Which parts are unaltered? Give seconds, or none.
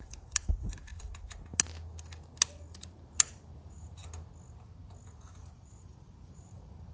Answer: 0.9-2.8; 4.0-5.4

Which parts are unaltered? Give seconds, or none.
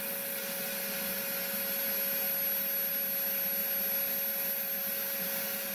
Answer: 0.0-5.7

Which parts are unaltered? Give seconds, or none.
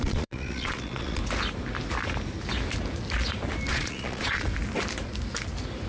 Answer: 1.2-3.7; 4.5-5.9